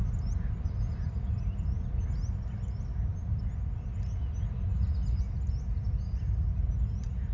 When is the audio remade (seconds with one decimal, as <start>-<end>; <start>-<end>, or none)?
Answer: none